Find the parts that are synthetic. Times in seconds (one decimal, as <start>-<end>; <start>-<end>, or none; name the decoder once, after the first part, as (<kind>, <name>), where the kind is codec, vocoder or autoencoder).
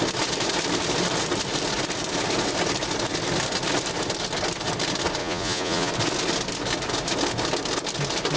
5.2-5.9 (vocoder, Vocos)